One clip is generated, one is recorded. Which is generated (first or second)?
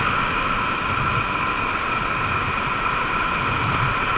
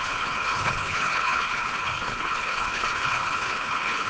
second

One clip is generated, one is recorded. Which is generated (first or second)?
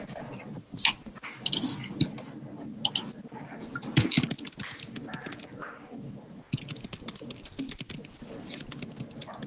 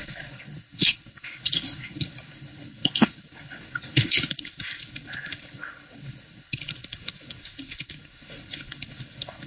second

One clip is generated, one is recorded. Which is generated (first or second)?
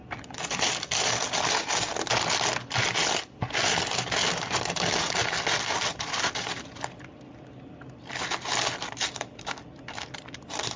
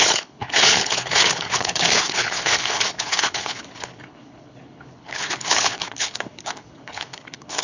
second